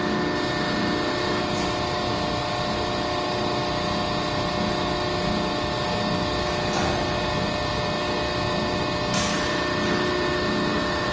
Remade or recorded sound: recorded